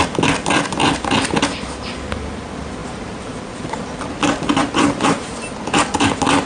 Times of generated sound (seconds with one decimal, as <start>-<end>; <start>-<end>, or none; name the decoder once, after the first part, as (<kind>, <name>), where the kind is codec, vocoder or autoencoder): 2.8-3.5 (vocoder, BigVGAN v2); 4.6-5.6